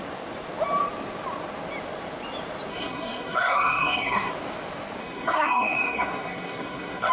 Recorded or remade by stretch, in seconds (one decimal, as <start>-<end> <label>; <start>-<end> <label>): 0.0-2.7 recorded; 2.7-4.3 remade; 4.3-5.0 recorded; 5.0-7.1 remade